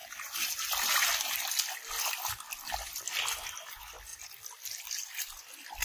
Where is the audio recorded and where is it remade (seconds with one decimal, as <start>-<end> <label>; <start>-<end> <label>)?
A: 0.0-5.8 recorded